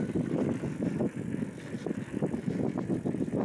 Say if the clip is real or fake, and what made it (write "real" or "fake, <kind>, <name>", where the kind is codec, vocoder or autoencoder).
real